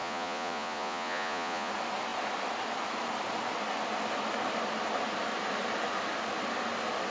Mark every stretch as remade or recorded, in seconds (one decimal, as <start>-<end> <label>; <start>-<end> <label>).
0.0-1.7 remade; 1.7-7.1 recorded